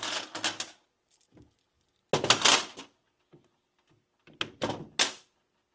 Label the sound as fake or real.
real